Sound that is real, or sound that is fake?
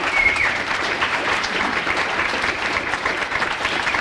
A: fake